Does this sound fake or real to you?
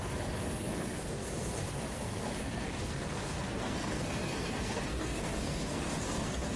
fake